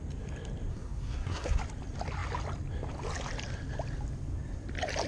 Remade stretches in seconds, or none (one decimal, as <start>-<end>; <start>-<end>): 0.7-1.6